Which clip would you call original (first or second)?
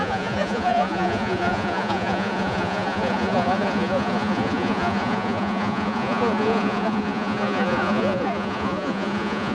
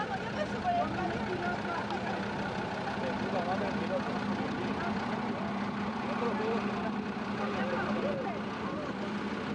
second